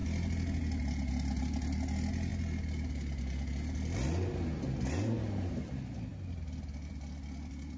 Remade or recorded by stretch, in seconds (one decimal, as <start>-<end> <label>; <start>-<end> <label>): 0.0-7.8 recorded